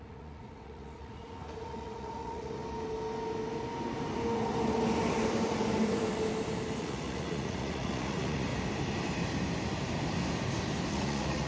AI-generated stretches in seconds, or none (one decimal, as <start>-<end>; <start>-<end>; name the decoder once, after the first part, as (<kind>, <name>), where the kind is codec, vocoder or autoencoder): 0.0-2.6 (vocoder, Vocos); 6.8-8.5; 10.9-11.5